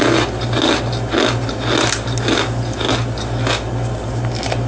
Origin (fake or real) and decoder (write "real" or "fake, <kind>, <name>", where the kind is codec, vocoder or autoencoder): real